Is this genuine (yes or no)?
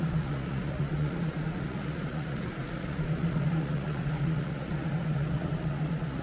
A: no